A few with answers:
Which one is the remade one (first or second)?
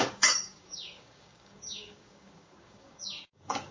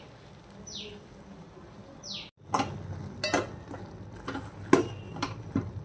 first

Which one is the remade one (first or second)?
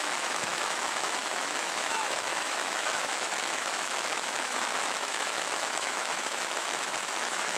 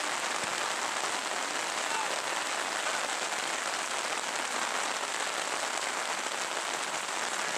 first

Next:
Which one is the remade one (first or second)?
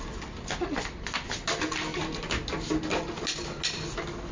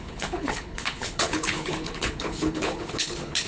second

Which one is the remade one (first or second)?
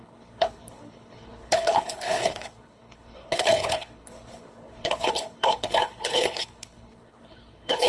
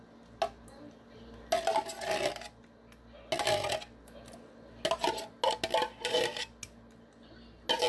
first